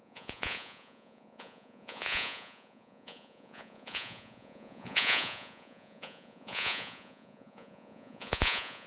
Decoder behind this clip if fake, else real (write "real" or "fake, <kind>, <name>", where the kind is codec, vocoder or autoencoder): fake, vocoder, Vocos